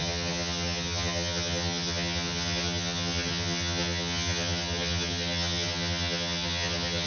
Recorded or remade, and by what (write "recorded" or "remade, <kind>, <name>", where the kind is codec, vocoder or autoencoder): remade, vocoder, HiFi-GAN